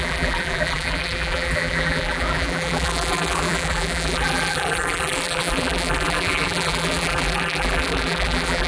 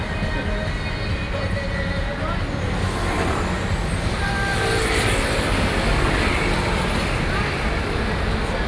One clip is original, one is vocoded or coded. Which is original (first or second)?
second